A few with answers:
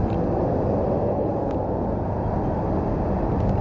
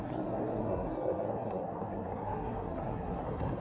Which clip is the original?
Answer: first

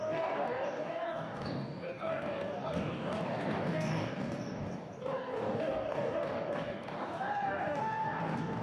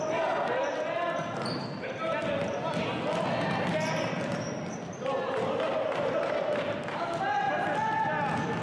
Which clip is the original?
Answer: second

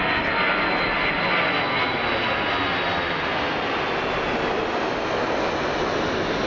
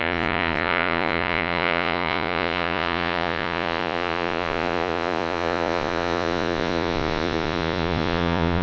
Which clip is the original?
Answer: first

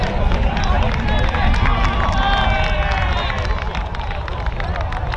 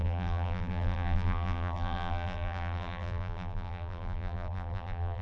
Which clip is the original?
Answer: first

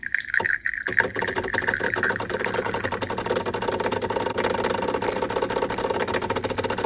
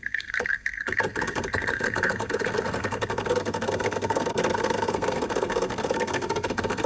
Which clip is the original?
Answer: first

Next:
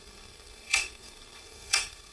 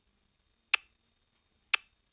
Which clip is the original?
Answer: second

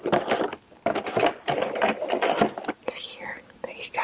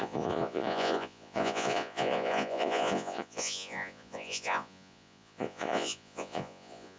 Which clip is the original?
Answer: first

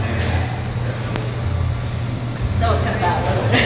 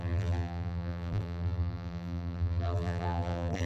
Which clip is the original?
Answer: first